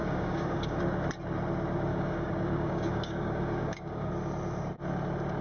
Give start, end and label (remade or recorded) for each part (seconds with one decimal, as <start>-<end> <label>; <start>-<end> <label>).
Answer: 0.0-0.8 remade; 0.8-1.9 recorded; 1.9-4.1 remade; 4.1-5.4 recorded